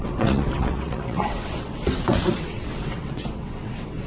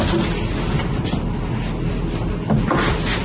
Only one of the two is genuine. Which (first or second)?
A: second